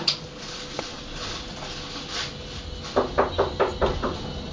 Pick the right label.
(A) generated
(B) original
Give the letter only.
B